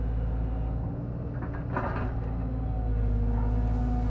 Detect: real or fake real